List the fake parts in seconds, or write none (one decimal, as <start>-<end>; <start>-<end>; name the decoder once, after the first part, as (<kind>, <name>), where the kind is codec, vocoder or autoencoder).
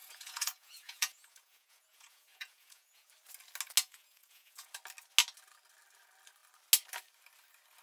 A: 0.0-3.1 (vocoder, Vocos); 3.8-4.7